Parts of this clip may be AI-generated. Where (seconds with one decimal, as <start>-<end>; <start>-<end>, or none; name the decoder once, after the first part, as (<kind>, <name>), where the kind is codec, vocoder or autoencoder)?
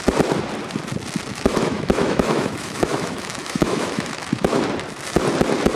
1.3-4.6 (autoencoder, DAC-VAE)